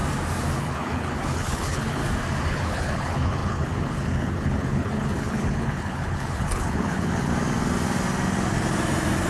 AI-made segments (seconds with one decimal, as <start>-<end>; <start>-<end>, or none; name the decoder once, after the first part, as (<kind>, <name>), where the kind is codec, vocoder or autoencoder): 0.6-2.0 (codec, HILCodec); 2.5-7.3